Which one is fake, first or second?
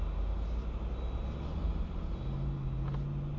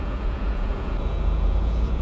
second